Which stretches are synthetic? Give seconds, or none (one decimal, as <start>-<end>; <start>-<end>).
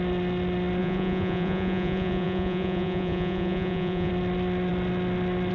0.8-4.1